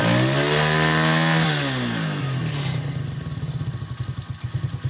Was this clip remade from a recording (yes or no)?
no